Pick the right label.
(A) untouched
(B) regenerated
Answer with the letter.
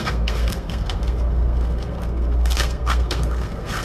B